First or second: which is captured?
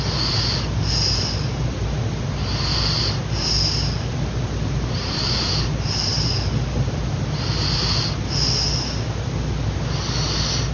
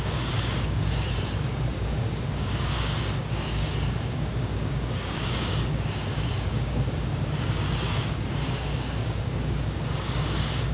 first